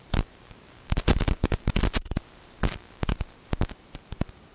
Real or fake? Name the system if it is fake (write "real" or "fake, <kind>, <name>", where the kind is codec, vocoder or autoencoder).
fake, vocoder, BigVGAN v2